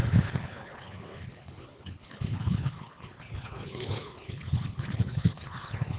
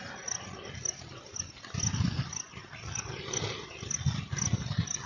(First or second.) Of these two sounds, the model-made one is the first